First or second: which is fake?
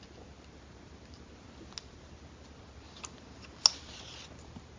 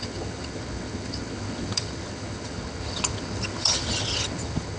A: second